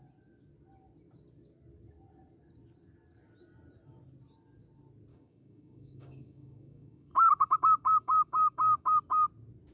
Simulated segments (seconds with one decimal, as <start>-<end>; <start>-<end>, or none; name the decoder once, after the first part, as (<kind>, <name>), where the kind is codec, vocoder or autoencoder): 5.1-8.9 (codec, DAC)